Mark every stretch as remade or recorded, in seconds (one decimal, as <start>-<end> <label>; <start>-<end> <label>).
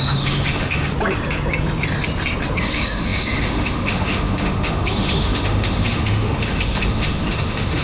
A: 0.0-0.9 remade; 0.9-2.6 recorded; 2.6-7.8 remade